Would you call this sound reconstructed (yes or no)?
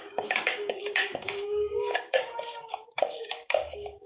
yes